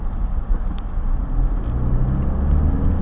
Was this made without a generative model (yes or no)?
yes